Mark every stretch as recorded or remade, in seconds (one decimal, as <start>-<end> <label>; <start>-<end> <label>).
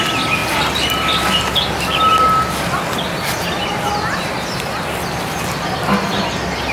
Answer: 0.0-6.7 recorded